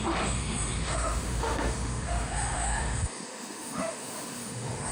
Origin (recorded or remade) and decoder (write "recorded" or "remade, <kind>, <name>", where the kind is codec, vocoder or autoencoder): remade, autoencoder, DAC-VAE